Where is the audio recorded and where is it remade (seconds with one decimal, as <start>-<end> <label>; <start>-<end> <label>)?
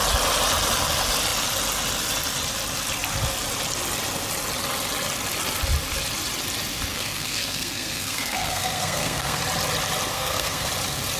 0.0-6.9 recorded; 6.9-9.4 remade; 9.4-10.1 recorded; 10.1-10.7 remade; 10.7-11.2 recorded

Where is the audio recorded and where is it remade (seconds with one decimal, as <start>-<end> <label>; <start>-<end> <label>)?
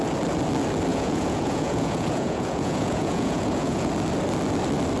0.0-0.9 recorded; 0.9-3.9 remade; 3.9-5.0 recorded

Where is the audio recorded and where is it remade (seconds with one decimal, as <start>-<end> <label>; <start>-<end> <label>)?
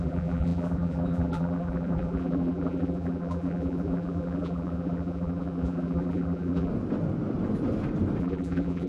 0.0-6.7 remade; 6.7-8.2 recorded; 8.2-8.9 remade